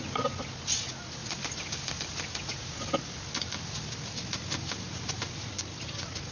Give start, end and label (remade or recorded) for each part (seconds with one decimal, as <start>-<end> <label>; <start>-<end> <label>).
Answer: 0.0-6.3 recorded

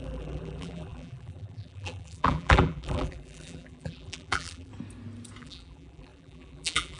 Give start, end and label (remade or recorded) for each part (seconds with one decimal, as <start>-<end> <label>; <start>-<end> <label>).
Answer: 0.0-4.7 remade; 4.7-5.4 recorded; 5.4-7.0 remade

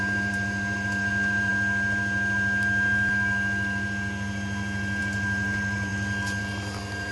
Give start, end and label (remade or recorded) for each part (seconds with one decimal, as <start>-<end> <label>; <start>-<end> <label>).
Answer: 0.0-1.5 remade; 1.5-5.0 recorded; 5.0-5.9 remade; 5.9-6.4 recorded; 6.4-7.1 remade

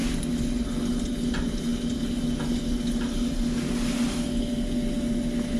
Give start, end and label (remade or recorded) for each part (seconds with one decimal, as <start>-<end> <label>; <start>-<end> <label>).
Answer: 0.0-5.6 recorded

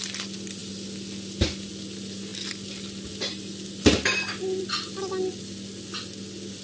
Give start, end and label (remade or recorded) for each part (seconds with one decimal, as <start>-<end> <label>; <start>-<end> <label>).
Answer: 0.0-0.6 recorded; 0.6-1.7 remade; 1.7-6.6 recorded

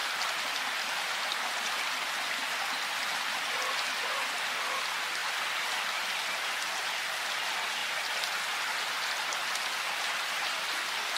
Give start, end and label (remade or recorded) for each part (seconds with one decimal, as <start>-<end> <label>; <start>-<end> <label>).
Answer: 0.0-11.2 recorded

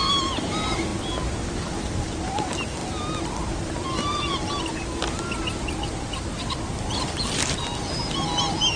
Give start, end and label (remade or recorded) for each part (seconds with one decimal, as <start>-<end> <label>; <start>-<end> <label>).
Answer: 0.0-8.8 recorded